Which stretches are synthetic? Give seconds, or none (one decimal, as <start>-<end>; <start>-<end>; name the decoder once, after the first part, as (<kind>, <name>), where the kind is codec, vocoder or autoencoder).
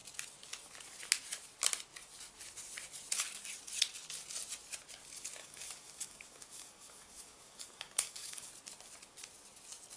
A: 5.4-8.5 (codec, DAC)